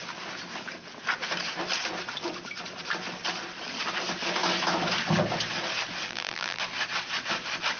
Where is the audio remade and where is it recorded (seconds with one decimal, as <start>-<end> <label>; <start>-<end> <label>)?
0.0-6.1 recorded; 6.1-6.6 remade; 6.6-7.8 recorded